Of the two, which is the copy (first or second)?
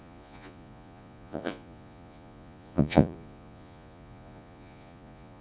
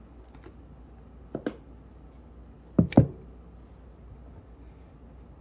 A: first